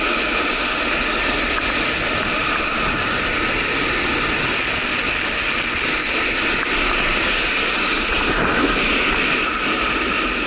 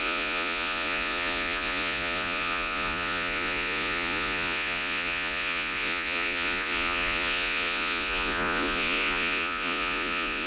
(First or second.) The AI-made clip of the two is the second